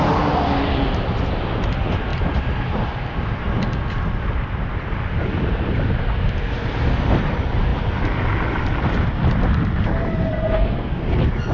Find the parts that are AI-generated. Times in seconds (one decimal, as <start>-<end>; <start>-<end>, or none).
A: 10.3-11.0